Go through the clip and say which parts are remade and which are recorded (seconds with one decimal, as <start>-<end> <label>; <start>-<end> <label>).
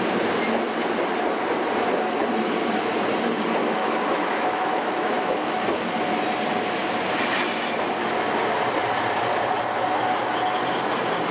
0.0-3.6 recorded; 3.6-5.9 remade; 5.9-11.3 recorded